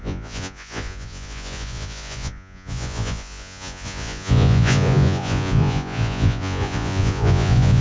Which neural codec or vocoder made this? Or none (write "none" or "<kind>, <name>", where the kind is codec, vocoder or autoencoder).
vocoder, Vocos